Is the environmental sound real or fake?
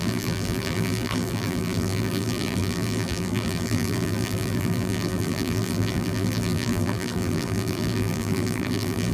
fake